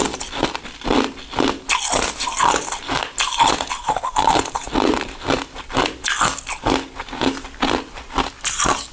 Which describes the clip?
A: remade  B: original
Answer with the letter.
B